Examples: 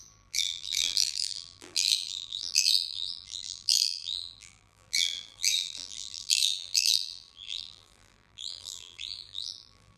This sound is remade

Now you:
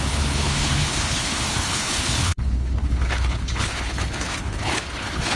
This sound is remade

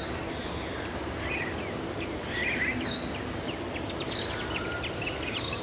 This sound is recorded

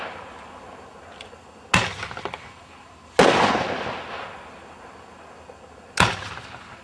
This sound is recorded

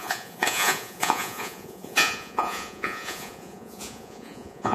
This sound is remade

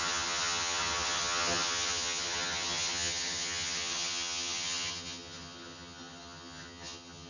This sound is remade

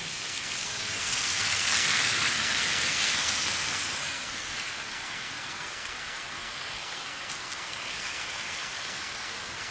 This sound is remade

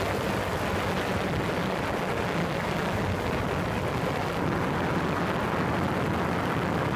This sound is recorded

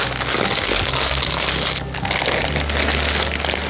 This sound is recorded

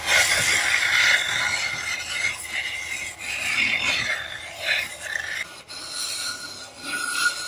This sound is recorded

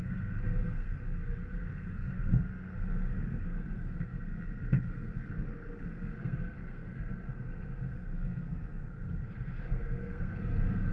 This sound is remade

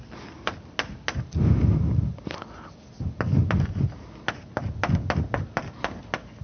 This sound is recorded